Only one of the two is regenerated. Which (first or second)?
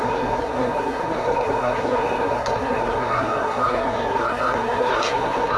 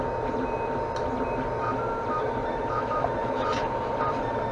first